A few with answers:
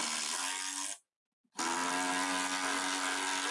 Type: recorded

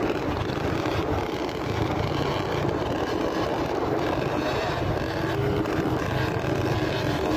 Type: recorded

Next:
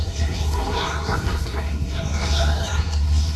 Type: remade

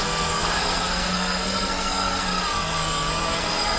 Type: remade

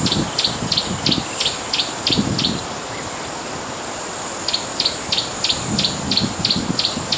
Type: recorded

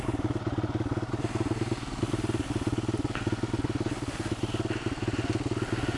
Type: recorded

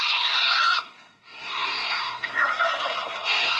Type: remade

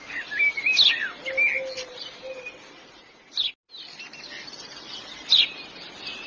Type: recorded